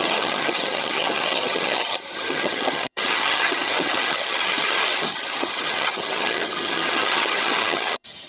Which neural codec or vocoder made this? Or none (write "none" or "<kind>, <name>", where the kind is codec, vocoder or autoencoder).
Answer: vocoder, HiFi-GAN